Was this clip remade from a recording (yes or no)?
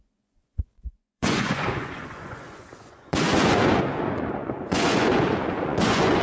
yes